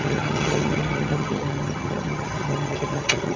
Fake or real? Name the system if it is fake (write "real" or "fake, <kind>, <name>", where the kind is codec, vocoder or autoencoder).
fake, vocoder, HiFi-GAN